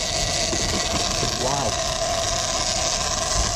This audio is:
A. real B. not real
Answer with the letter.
A